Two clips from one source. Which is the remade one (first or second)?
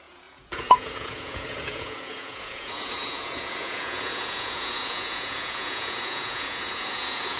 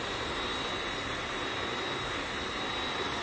first